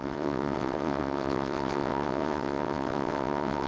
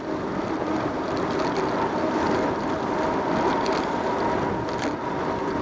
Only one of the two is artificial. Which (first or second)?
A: first